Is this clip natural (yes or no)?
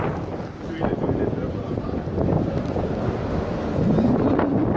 yes